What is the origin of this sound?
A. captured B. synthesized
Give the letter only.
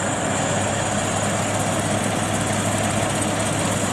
A